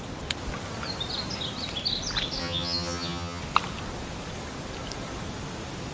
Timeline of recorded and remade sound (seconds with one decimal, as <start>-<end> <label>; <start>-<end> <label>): 0.0-2.4 recorded; 2.4-3.4 remade; 3.4-5.9 recorded